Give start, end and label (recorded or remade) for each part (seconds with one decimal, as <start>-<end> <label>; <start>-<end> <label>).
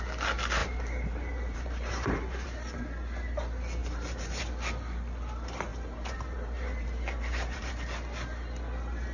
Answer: 0.0-0.6 recorded; 0.6-2.8 remade; 2.8-3.8 recorded; 3.8-4.4 remade; 4.4-5.7 recorded; 5.7-7.7 remade; 7.7-9.1 recorded